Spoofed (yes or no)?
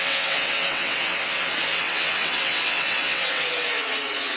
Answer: yes